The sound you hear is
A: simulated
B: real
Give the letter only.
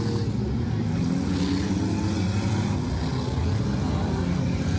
B